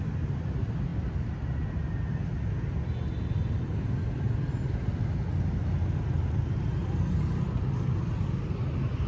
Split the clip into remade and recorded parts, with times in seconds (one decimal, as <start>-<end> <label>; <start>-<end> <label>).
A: 0.0-6.8 recorded; 6.8-7.6 remade; 7.6-9.1 recorded